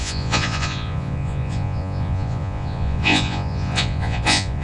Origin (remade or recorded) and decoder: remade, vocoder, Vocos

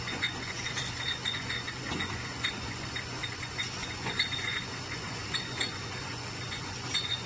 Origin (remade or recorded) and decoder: remade, vocoder, Vocos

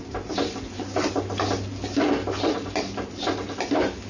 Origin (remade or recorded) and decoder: recorded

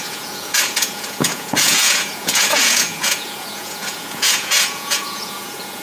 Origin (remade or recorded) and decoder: remade, vocoder, Vocos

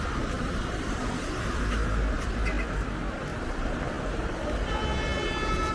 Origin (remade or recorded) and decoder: recorded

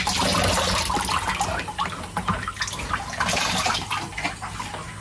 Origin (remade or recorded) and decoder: recorded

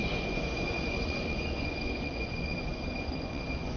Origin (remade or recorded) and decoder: remade, vocoder, Vocos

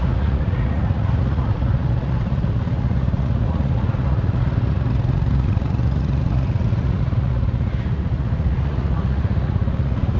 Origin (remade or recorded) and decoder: remade, vocoder, Vocos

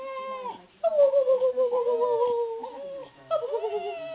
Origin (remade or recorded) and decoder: recorded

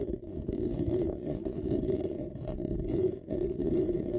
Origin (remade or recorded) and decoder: remade, vocoder, Vocos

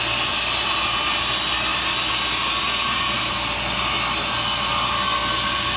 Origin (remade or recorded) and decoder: recorded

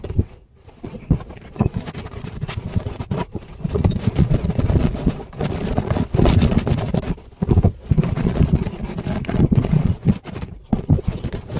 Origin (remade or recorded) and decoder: remade, vocoder, Vocos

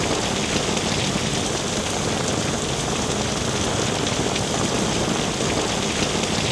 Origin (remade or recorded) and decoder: recorded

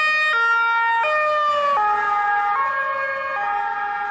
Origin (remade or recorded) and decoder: recorded